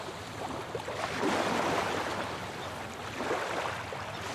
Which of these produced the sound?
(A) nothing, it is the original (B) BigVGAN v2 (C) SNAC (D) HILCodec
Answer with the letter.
A